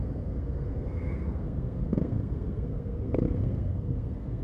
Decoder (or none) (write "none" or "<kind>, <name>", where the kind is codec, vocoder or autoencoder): codec, SNAC